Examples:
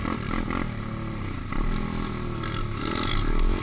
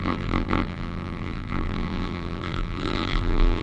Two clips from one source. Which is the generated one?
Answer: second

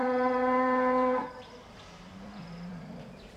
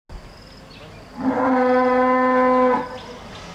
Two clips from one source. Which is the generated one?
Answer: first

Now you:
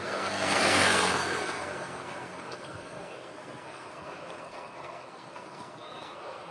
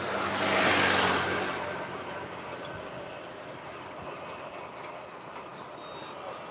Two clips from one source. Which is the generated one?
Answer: first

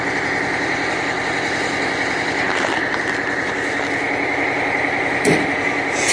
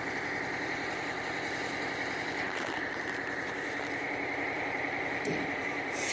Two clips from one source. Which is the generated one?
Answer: second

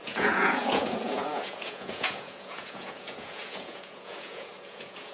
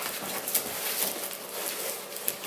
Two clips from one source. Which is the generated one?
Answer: first